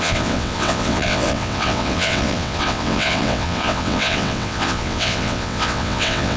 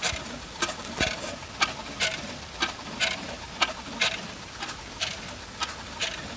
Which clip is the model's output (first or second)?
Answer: first